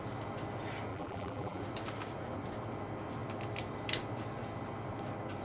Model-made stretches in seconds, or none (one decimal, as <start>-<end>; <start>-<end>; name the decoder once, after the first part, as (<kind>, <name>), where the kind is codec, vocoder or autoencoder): 0.9-1.6 (vocoder, BigVGAN v2)